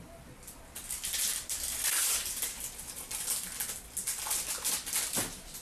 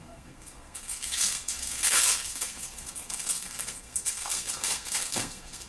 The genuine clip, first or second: first